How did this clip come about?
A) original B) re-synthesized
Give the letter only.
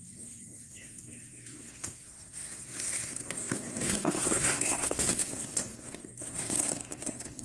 B